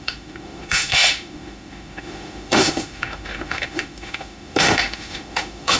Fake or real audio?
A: fake